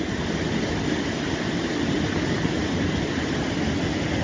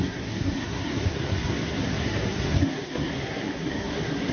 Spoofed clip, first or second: second